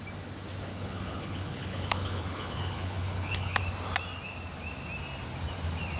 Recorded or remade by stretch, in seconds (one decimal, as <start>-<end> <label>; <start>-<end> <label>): 0.0-0.7 recorded; 0.7-3.6 remade; 3.6-6.0 recorded